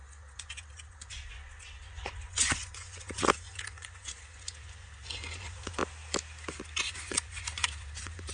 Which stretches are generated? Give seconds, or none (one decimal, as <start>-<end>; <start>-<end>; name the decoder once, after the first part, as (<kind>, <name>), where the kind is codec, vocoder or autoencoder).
0.0-5.8 (vocoder, Vocos); 6.8-8.3